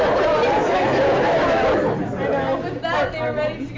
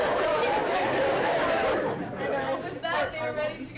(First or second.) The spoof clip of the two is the second